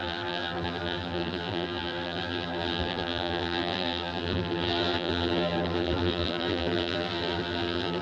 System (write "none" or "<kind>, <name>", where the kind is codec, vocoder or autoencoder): vocoder, BigVGAN v2